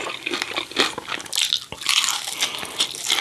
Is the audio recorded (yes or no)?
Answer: yes